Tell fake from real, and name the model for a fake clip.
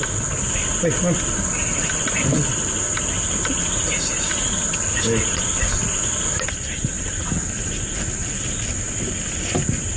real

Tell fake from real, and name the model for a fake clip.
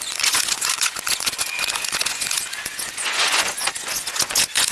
fake, vocoder, Vocos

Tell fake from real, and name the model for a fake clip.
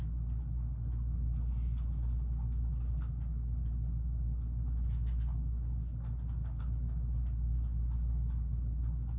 real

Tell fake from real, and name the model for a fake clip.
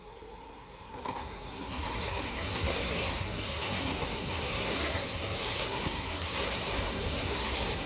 fake, codec, SNAC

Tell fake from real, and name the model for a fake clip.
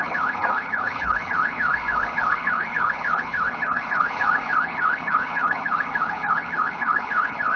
fake, codec, HILCodec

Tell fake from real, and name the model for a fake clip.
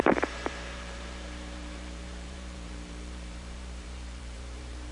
fake, vocoder, BigVGAN v2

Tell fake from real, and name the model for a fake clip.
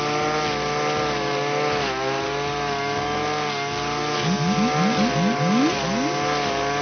real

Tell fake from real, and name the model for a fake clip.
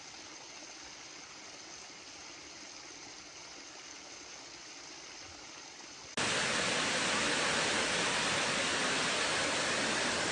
real